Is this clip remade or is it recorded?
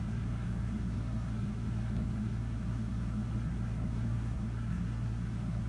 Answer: remade